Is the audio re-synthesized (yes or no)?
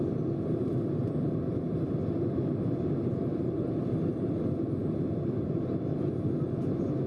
no